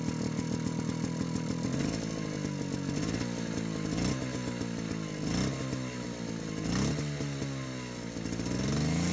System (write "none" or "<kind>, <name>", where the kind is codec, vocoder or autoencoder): none